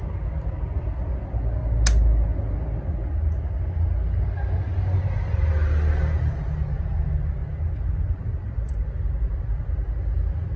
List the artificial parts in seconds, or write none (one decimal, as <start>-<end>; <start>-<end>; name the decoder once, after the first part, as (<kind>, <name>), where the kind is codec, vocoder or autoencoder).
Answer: none